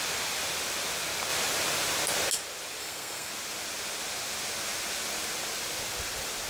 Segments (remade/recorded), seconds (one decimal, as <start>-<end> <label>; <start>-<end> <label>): 0.0-2.8 recorded; 2.8-3.3 remade; 3.3-6.5 recorded